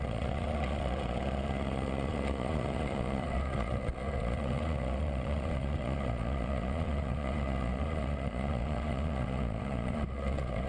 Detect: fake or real fake